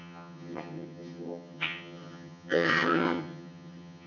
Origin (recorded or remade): remade